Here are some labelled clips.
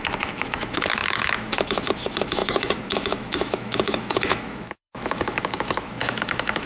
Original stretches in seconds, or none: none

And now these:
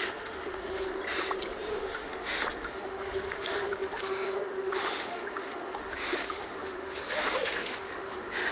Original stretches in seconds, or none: 0.9-1.7

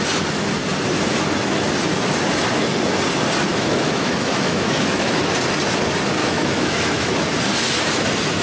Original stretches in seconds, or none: 0.0-3.5; 5.2-6.2; 7.1-8.4

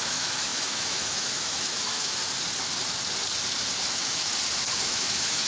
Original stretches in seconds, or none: 2.2-3.9; 4.3-4.8